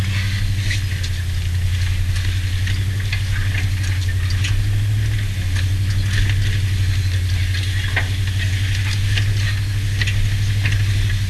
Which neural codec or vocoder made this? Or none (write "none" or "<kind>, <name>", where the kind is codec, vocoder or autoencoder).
none